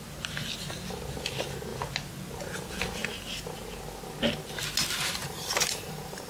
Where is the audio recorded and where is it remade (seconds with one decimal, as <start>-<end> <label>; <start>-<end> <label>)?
0.0-5.2 recorded; 5.2-6.3 remade